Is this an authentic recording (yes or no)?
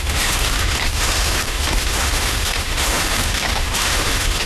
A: no